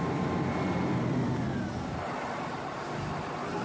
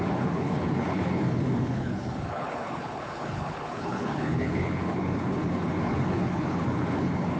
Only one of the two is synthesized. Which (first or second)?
second